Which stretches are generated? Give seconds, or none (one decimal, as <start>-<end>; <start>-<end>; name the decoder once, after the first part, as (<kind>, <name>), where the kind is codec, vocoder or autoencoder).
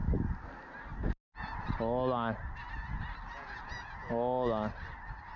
3.3-4.1 (vocoder, Vocos)